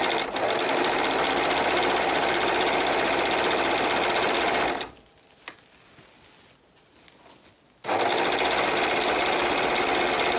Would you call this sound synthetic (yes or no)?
no